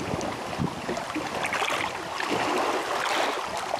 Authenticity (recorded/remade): recorded